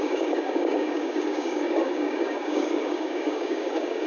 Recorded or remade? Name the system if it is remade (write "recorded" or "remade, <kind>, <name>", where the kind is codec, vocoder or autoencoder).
remade, codec, DAC